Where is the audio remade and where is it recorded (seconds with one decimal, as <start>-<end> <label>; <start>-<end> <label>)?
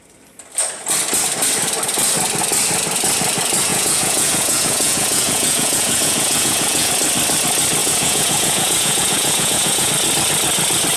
0.0-3.7 recorded; 3.7-6.9 remade; 6.9-7.8 recorded; 7.8-9.9 remade; 9.9-11.0 recorded